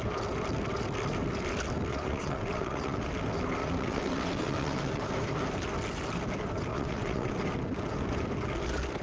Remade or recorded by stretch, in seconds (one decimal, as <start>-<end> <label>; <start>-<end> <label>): 0.0-1.9 recorded; 1.9-3.1 remade; 3.1-3.6 recorded; 3.6-5.0 remade; 5.0-6.7 recorded; 6.7-7.3 remade; 7.3-9.0 recorded